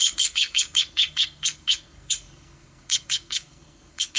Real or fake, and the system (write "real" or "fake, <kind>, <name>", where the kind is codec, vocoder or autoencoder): fake, codec, SNAC